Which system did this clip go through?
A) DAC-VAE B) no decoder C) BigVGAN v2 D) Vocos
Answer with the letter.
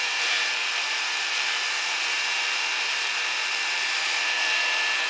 C